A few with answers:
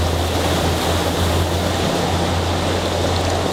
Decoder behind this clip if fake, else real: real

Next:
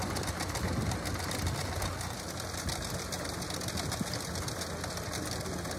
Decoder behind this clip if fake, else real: real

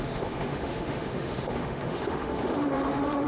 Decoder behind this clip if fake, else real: fake, autoencoder, DAC-VAE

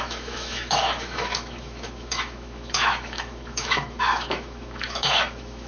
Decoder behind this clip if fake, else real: fake, autoencoder, DAC-VAE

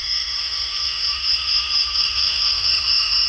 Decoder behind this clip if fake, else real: fake, autoencoder, DAC-VAE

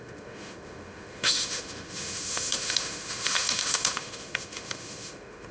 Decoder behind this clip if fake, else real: fake, autoencoder, DAC-VAE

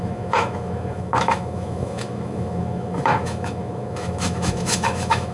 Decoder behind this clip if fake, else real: fake, autoencoder, DAC-VAE